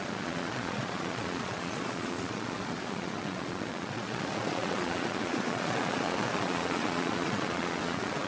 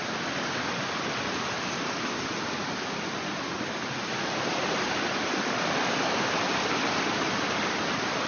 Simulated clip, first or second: first